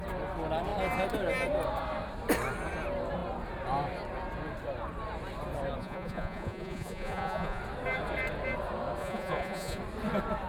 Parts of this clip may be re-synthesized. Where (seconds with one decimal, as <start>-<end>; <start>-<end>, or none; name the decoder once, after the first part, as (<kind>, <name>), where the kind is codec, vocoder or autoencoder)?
5.8-7.6 (vocoder, Vocos); 9.0-9.8